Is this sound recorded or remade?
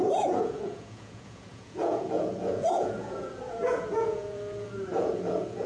remade